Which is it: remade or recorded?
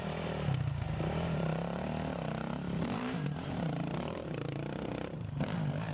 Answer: remade